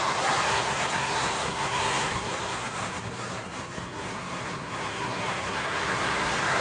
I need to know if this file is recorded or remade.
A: remade